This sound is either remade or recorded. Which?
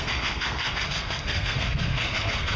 remade